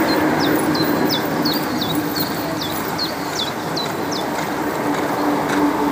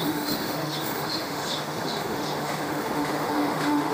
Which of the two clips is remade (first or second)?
second